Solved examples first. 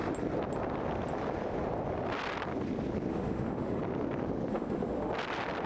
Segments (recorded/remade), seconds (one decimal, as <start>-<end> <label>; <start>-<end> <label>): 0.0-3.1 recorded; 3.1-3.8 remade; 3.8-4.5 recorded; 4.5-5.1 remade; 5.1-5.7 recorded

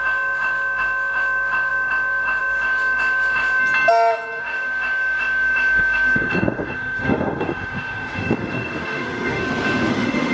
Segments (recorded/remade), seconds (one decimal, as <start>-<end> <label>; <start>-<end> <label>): 0.0-3.6 remade; 3.6-4.4 recorded; 4.4-9.4 remade; 9.4-9.9 recorded; 9.9-10.3 remade

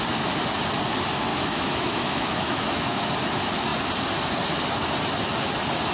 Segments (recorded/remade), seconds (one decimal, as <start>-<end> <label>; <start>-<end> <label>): 0.0-1.3 recorded; 1.3-3.1 remade; 3.1-5.9 recorded

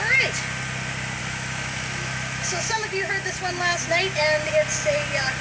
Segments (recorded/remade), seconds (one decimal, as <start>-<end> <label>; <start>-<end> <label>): 0.0-1.2 recorded; 1.2-3.1 remade; 3.1-5.4 recorded

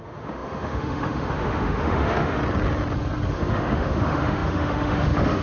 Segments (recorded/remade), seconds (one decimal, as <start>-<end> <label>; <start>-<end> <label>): 0.0-2.4 remade; 2.4-3.3 recorded; 3.3-5.4 remade

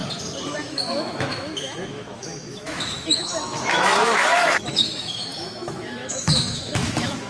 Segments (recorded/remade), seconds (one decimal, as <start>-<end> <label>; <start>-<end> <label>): 0.0-0.5 recorded; 0.5-7.3 remade

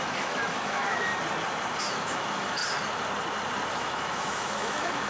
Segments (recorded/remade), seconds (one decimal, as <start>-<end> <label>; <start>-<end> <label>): 0.0-1.1 remade; 1.1-1.8 recorded; 1.8-2.6 remade; 2.6-3.7 recorded; 3.7-5.1 remade